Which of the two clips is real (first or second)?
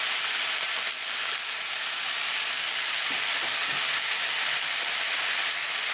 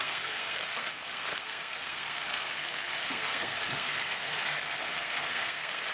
first